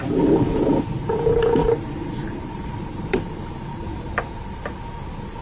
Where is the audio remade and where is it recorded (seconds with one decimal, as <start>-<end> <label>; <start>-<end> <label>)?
0.0-1.6 recorded; 1.6-4.8 remade; 4.8-5.4 recorded